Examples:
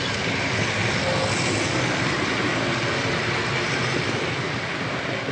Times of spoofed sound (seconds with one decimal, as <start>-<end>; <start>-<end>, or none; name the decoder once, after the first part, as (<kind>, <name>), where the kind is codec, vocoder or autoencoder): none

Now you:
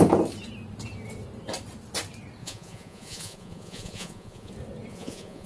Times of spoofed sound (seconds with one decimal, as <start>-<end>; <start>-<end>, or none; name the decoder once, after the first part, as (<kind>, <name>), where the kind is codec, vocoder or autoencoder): 2.4-4.5 (vocoder, Vocos); 4.9-5.5

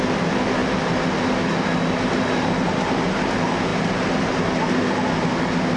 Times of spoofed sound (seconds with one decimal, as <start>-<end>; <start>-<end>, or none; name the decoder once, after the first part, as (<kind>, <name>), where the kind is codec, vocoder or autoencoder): none

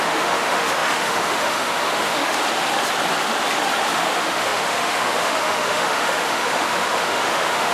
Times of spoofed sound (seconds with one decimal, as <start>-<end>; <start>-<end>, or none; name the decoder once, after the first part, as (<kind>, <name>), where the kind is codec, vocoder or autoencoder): 0.0-2.4 (autoencoder, DAC-VAE); 3.9-7.7